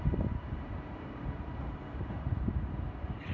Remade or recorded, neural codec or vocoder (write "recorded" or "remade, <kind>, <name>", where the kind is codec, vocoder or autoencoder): remade, vocoder, BigVGAN v2